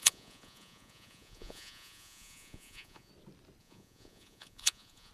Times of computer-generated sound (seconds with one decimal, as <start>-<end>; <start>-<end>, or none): 0.0-3.1; 3.6-5.1